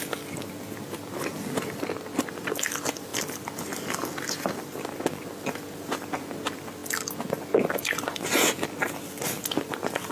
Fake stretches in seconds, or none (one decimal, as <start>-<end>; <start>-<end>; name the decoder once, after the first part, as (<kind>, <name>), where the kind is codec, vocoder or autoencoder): none